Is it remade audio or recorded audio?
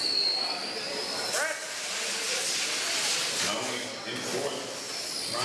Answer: recorded